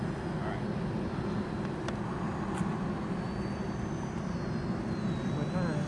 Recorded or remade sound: recorded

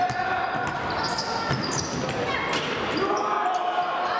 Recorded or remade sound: recorded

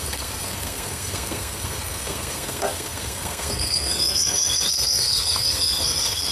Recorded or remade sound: remade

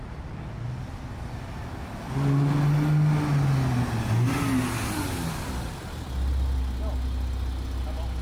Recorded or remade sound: recorded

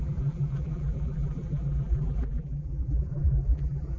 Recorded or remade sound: remade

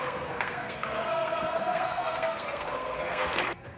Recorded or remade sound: remade